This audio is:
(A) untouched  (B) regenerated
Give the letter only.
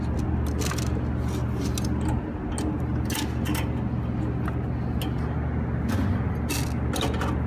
A